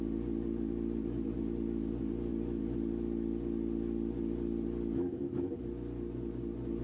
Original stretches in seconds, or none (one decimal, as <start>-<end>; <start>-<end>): 0.0-6.8

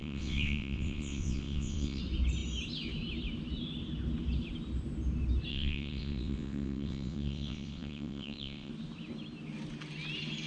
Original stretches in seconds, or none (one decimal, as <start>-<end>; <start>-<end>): 2.0-5.5; 8.7-10.5

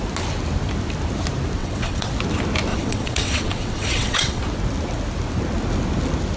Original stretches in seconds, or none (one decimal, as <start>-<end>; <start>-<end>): 0.0-1.6; 2.1-2.7; 4.4-6.4

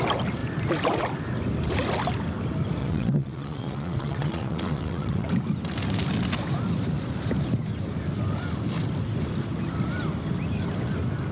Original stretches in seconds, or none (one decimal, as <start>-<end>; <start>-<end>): 0.0-2.8; 5.3-11.3

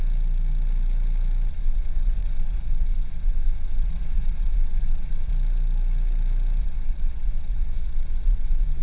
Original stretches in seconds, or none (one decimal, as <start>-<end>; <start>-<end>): 0.0-1.5; 5.3-6.6

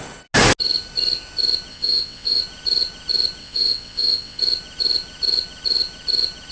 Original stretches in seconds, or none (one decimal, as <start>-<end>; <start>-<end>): 0.0-1.7; 2.4-3.4; 4.4-6.5

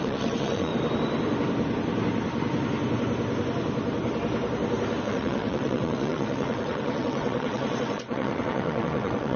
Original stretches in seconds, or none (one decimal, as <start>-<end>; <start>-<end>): 0.7-5.0